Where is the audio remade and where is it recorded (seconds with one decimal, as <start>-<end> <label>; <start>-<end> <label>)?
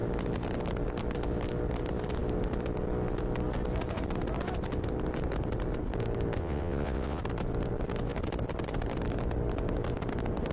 0.0-6.4 recorded; 6.4-7.2 remade; 7.2-10.5 recorded